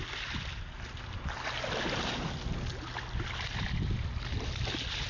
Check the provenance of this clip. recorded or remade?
recorded